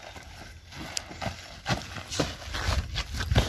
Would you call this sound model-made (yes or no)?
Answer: no